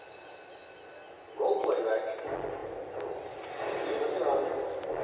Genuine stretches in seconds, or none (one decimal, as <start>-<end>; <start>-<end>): 0.0-5.0